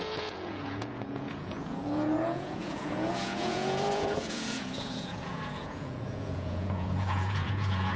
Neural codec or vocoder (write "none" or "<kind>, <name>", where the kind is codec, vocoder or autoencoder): vocoder, Vocos